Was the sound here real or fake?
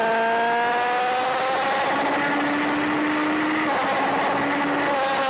real